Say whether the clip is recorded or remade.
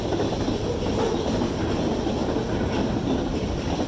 recorded